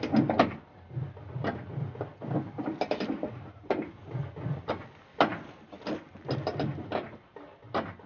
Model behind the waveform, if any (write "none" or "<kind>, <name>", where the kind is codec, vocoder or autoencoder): none